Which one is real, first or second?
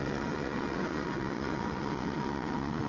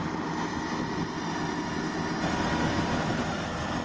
second